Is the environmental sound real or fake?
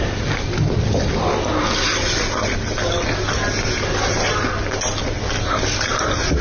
real